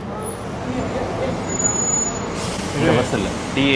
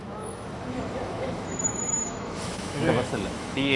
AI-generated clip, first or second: second